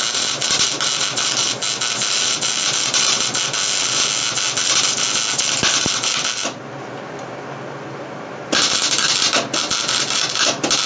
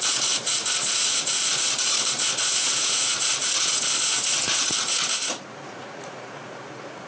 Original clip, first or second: first